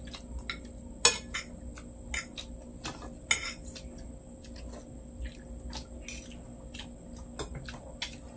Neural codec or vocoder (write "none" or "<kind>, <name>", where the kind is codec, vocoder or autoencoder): none